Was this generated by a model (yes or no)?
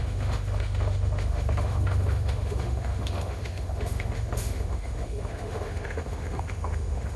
yes